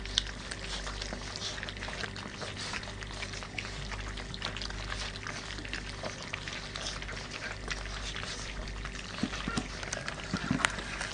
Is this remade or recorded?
recorded